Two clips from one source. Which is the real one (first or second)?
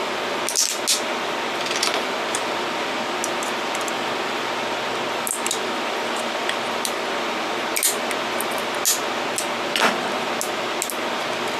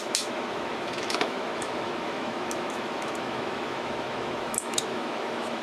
first